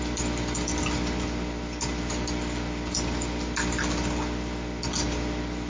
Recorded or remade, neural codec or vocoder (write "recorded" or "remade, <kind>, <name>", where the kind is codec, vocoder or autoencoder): recorded